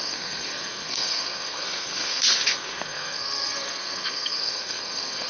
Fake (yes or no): yes